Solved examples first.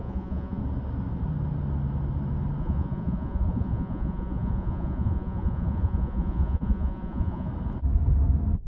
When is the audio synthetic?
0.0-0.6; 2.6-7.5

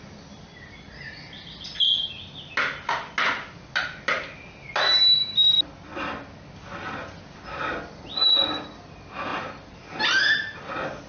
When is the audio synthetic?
9.3-10.7

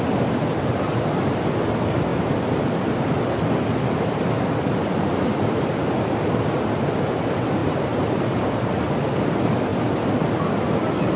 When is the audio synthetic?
4.9-5.7

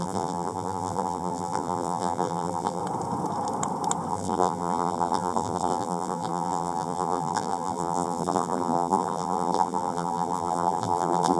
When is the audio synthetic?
0.0-2.8; 4.1-11.4